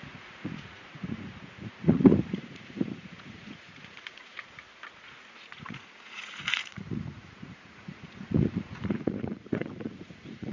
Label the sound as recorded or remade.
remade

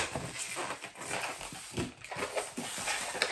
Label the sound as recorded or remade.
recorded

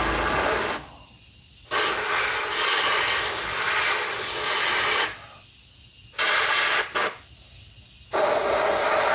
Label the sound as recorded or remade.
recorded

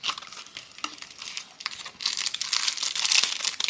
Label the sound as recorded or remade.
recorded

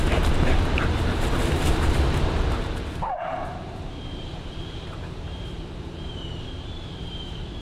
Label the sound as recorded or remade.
remade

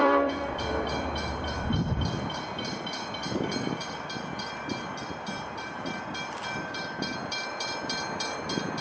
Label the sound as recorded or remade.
remade